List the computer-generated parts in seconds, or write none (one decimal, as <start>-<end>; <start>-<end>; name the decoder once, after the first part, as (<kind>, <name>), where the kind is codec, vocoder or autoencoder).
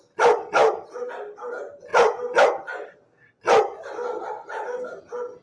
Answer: none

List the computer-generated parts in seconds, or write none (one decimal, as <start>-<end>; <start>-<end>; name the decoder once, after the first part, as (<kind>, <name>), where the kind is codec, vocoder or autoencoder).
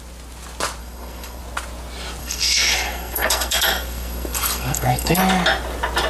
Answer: 0.8-1.4 (codec, SNAC); 2.2-5.2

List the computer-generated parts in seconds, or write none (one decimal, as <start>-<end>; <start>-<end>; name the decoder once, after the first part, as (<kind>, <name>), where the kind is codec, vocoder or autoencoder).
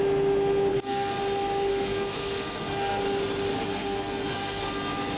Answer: 0.7-1.2 (codec, SNAC); 1.7-3.0; 3.7-4.7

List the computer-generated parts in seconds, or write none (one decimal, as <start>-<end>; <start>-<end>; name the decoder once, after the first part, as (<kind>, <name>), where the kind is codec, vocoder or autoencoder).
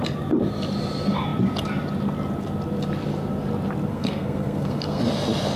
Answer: 3.9-5.0 (codec, SNAC)